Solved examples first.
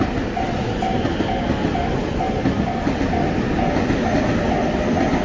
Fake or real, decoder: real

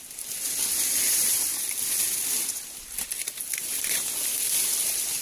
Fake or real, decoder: real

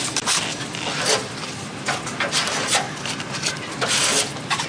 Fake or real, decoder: real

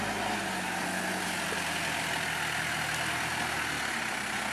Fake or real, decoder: real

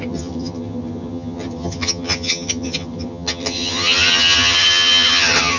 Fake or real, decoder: fake, vocoder, HiFi-GAN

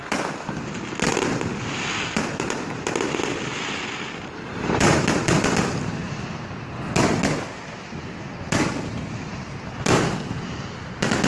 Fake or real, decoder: real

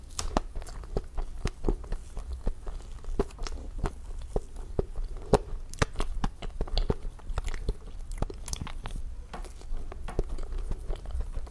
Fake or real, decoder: real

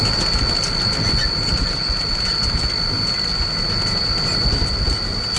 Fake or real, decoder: real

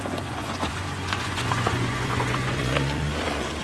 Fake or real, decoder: fake, vocoder, Vocos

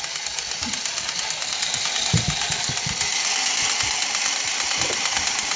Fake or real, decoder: real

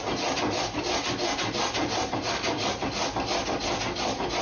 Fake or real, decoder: real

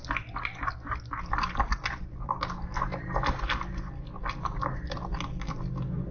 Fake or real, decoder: real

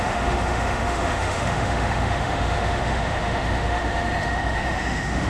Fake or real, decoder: fake, autoencoder, DAC-VAE